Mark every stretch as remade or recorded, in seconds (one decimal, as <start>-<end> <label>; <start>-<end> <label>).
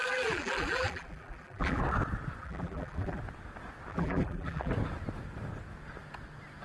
0.0-1.8 remade; 1.8-2.4 recorded; 2.4-3.2 remade; 3.2-3.9 recorded; 3.9-4.7 remade; 4.7-6.6 recorded